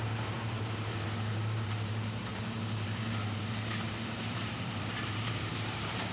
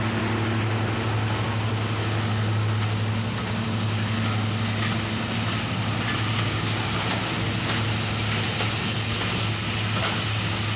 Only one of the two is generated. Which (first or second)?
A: first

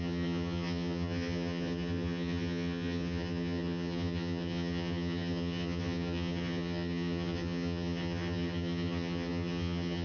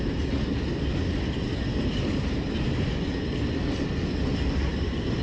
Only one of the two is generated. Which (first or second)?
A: first